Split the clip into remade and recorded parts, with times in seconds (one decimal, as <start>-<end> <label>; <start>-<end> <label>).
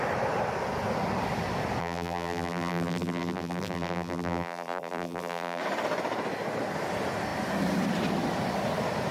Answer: 0.0-1.8 recorded; 1.8-5.6 remade; 5.6-9.1 recorded